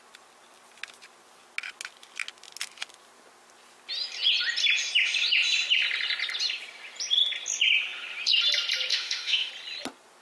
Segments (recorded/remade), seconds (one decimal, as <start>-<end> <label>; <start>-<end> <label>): 0.0-8.9 recorded; 8.9-9.5 remade; 9.5-10.2 recorded